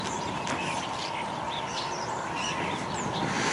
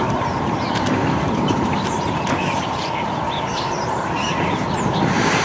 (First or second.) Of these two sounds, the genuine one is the first